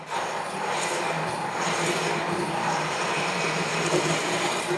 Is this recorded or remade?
remade